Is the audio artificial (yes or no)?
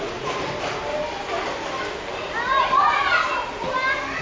no